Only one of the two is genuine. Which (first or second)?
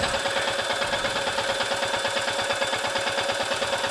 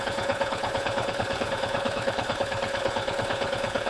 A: first